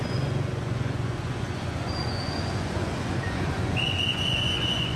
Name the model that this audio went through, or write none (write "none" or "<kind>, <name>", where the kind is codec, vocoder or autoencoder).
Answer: vocoder, Vocos